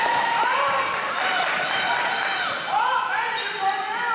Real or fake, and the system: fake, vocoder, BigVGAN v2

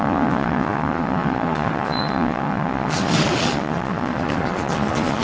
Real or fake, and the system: fake, vocoder, Vocos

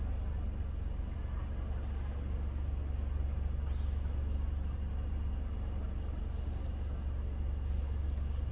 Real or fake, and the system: real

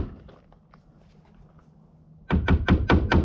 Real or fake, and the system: real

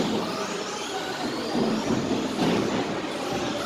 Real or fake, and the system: real